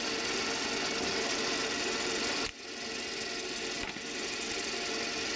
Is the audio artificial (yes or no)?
no